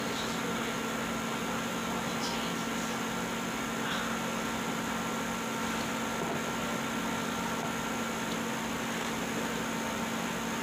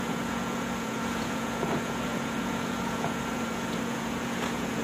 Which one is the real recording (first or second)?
first